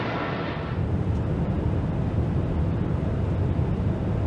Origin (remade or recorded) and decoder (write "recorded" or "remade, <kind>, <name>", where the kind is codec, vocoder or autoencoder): recorded